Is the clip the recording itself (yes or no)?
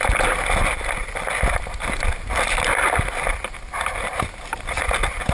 yes